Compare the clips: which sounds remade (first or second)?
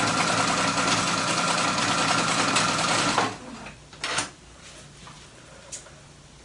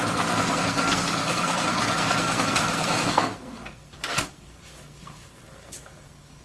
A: second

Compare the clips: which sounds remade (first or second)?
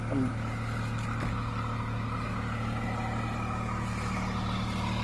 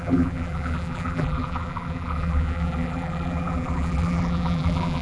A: second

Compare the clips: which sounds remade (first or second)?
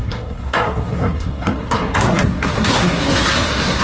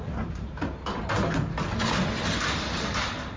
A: first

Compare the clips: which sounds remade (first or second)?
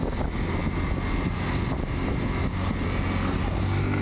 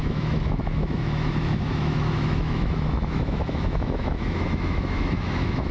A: second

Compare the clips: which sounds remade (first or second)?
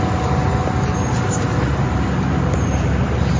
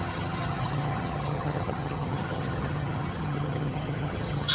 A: second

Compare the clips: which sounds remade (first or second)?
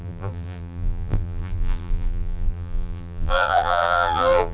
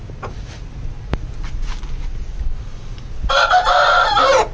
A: first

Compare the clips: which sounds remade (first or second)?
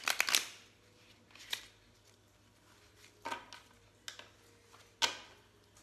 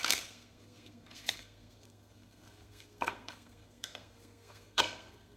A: second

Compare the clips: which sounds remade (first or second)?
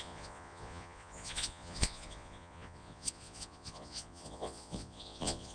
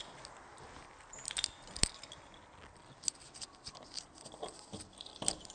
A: first